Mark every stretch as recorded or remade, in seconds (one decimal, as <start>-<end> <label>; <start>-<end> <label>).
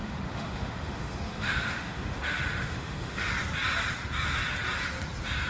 0.0-3.3 remade; 3.3-5.5 recorded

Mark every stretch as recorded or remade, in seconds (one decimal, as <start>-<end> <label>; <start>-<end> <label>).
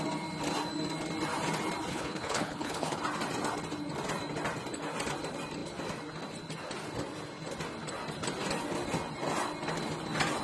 0.0-1.9 recorded; 1.9-3.0 remade; 3.0-10.4 recorded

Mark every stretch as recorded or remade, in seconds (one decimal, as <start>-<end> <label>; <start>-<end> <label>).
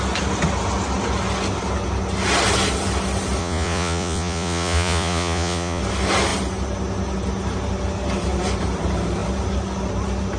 0.0-3.4 recorded; 3.4-5.8 remade; 5.8-10.4 recorded